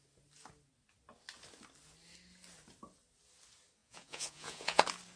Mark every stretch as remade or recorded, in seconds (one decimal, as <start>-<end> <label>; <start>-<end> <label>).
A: 0.0-3.8 recorded; 3.8-4.8 remade; 4.8-5.2 recorded